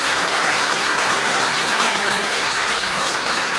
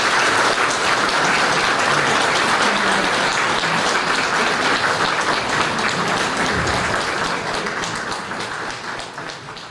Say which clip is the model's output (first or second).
first